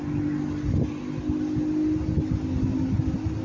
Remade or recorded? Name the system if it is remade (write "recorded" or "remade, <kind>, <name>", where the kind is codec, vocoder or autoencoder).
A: recorded